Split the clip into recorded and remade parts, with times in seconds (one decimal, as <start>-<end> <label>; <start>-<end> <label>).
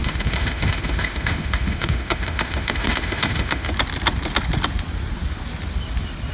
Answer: 0.0-3.7 remade; 3.7-6.3 recorded